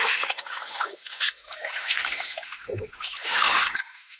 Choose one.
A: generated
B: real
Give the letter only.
A